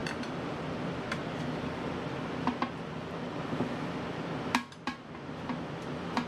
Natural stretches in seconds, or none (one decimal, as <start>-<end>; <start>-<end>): 0.0-6.3